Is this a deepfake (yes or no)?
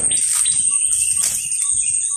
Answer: no